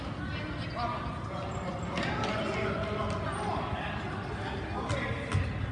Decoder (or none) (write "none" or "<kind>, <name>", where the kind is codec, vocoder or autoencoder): none